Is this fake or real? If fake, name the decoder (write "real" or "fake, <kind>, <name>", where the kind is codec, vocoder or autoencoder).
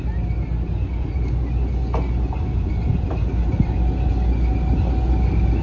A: real